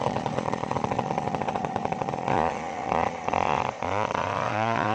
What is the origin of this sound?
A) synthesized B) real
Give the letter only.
A